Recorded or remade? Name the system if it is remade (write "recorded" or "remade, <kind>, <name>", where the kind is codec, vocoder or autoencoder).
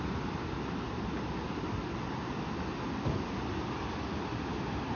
recorded